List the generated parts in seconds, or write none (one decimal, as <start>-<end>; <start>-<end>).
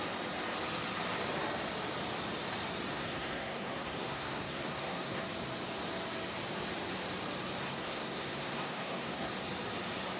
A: 2.9-5.2; 7.6-9.3